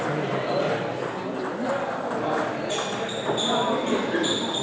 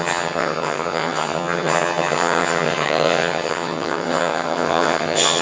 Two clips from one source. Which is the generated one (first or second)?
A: second